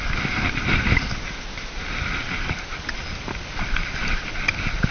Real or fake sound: real